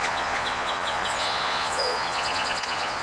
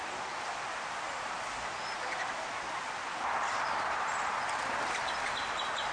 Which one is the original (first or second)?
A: second